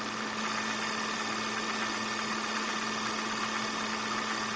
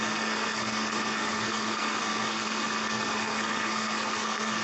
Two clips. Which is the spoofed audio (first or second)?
second